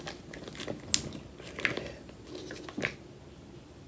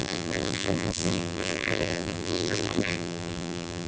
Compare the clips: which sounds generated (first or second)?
second